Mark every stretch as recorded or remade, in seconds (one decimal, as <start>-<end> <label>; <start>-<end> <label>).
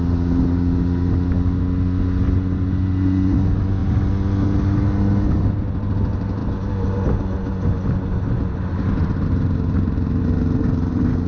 0.0-11.3 recorded